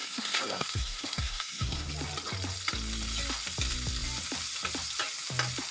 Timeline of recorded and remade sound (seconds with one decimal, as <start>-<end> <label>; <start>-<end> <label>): 0.0-1.9 remade; 1.9-5.7 recorded